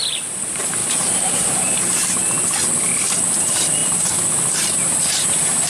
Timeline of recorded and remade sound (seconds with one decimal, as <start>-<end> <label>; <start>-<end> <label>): 0.0-2.2 remade; 2.2-3.4 recorded; 3.4-5.7 remade